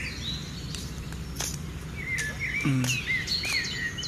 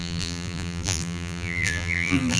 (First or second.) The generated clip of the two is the second